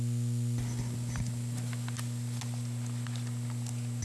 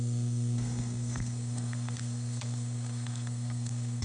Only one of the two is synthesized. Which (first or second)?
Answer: second